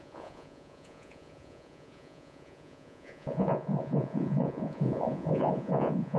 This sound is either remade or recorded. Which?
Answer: remade